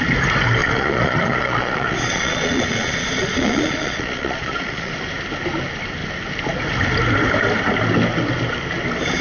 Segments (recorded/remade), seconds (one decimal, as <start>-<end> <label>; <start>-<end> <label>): 0.0-0.6 recorded; 0.6-4.9 remade; 4.9-9.2 recorded